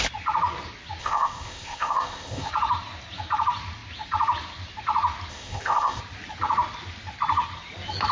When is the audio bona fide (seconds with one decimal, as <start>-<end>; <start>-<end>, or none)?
0.0-1.0; 2.5-5.3; 6.0-8.1